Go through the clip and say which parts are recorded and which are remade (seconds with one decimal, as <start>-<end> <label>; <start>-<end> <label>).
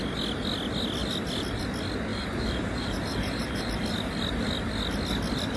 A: 0.0-2.1 recorded; 2.1-3.7 remade; 3.7-5.6 recorded